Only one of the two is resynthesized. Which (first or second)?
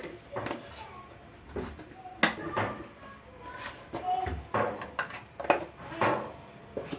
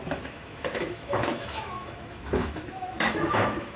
second